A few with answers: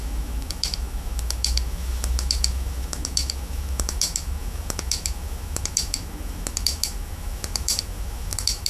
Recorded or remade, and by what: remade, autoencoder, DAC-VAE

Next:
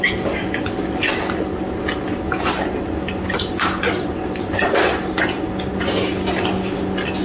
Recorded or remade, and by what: recorded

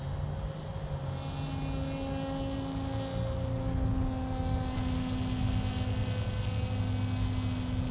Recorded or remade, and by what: recorded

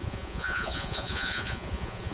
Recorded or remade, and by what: remade, vocoder, Vocos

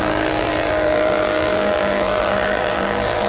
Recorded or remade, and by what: remade, vocoder, BigVGAN v2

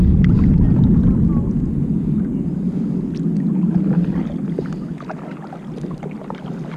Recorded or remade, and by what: recorded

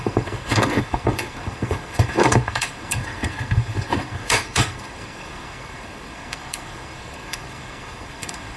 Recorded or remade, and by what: remade, codec, SNAC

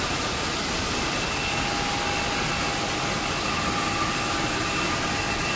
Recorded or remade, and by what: recorded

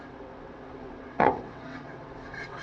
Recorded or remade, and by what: remade, vocoder, WaveNeXt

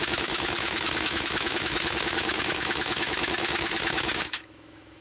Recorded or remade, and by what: remade, autoencoder, DAC-VAE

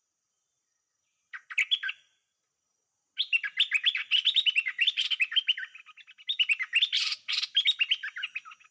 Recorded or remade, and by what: recorded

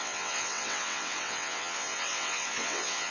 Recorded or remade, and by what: remade, vocoder, WaveNeXt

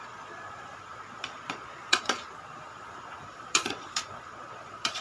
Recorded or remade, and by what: remade, vocoder, Vocos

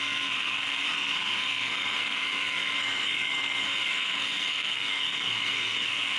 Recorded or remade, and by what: remade, codec, SNAC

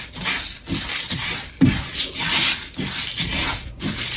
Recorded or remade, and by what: recorded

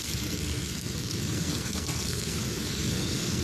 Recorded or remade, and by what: remade, codec, SNAC